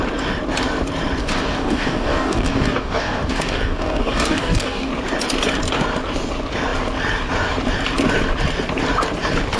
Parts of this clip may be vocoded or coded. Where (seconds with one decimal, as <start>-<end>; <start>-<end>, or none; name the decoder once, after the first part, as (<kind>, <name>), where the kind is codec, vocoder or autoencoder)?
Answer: 1.2-4.9 (codec, DAC)